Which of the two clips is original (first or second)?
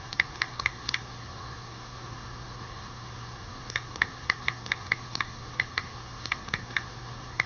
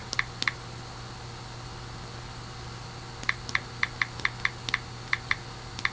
second